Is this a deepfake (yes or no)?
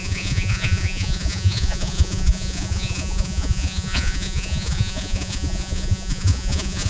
yes